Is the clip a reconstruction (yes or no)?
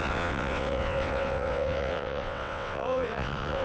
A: yes